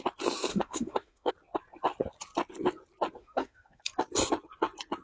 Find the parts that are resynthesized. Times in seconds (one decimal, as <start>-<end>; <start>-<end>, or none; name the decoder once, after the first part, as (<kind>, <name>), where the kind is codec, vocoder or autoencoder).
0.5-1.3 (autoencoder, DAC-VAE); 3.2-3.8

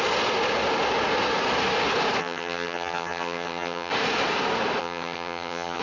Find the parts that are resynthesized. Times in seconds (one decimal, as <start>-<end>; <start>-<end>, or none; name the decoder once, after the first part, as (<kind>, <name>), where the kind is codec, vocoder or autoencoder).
2.2-3.9 (vocoder, HiFi-GAN); 4.8-5.8

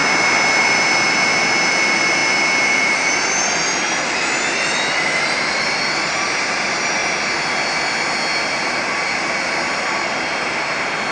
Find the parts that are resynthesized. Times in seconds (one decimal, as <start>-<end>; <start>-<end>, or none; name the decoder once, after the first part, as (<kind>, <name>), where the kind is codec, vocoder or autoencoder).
0.6-7.0 (vocoder, BigVGAN v2); 9.4-11.1